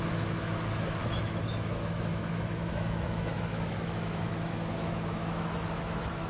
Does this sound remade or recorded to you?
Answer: remade